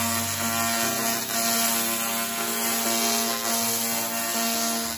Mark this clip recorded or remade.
recorded